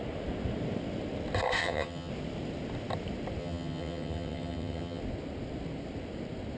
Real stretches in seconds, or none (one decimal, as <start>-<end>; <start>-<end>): 0.0-1.6; 2.1-3.4; 5.0-6.6